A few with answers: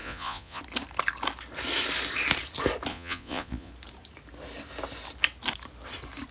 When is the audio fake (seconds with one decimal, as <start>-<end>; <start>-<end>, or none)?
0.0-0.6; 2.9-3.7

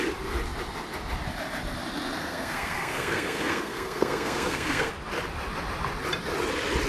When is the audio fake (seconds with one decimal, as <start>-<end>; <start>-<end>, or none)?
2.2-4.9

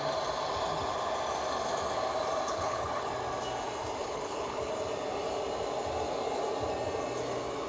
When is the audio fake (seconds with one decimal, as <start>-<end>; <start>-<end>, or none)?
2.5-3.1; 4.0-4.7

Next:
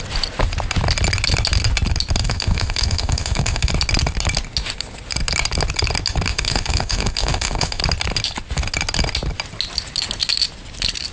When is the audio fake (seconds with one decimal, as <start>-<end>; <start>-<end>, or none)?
2.2-3.7; 6.3-7.8

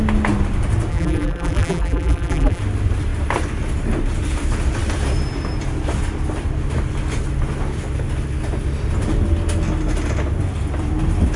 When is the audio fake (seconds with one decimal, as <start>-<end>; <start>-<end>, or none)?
0.9-2.6

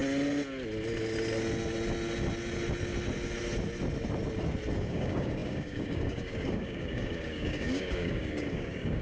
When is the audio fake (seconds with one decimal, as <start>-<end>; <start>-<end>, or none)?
4.9-9.0

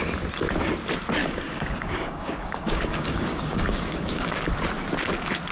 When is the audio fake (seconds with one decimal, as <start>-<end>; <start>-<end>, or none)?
1.2-4.5